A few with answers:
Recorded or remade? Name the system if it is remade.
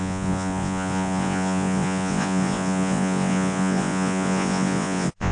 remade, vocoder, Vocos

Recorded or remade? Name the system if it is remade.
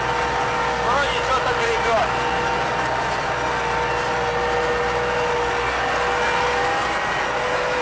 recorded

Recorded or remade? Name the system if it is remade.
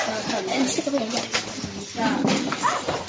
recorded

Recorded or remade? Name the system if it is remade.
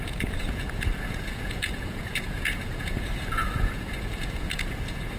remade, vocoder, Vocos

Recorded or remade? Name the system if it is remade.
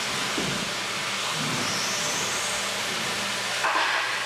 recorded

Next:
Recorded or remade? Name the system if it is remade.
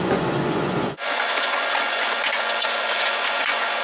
remade, vocoder, Vocos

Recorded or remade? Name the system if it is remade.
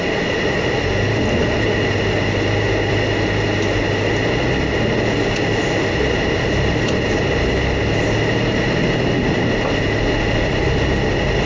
recorded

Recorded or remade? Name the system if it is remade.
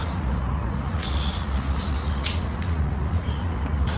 remade, vocoder, Vocos